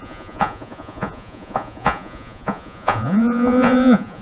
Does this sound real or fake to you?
fake